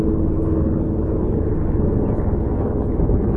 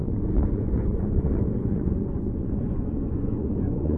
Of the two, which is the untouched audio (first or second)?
first